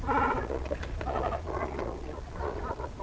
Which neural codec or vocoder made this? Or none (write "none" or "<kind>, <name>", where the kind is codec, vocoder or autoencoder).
vocoder, Vocos